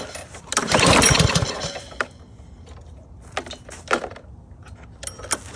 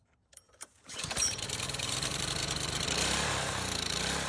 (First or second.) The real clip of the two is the first